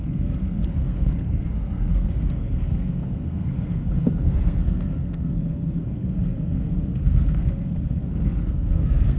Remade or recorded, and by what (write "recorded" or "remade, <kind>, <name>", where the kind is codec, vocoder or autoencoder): remade, codec, SNAC